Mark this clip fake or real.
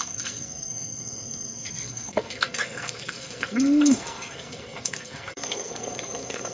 fake